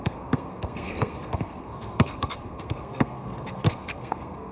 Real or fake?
fake